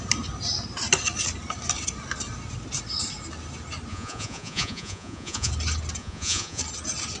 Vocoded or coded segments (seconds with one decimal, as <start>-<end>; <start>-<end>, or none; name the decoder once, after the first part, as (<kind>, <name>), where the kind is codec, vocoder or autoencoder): 3.9-5.5 (vocoder, Vocos); 6.0-6.6